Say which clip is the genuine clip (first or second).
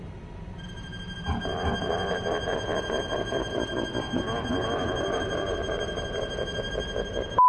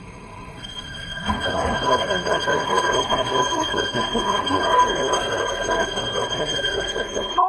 first